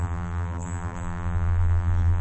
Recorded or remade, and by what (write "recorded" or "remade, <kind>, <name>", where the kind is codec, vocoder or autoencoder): remade, vocoder, BigVGAN v2